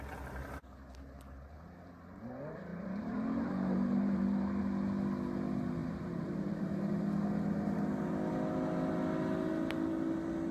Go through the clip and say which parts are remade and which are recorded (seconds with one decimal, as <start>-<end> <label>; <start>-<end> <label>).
0.0-2.7 recorded; 2.7-4.6 remade; 4.6-5.8 recorded; 5.8-6.9 remade; 6.9-10.5 recorded